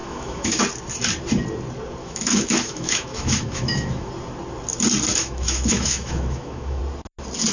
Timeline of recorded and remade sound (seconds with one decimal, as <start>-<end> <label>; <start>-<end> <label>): 0.0-0.6 remade; 0.6-2.0 recorded; 2.0-4.1 remade; 4.1-5.1 recorded; 5.1-6.8 remade; 6.8-7.5 recorded